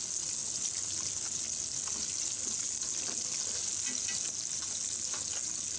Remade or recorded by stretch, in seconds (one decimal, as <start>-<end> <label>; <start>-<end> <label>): 0.0-5.8 recorded